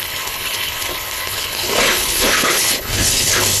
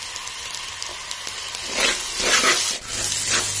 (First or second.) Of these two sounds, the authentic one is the second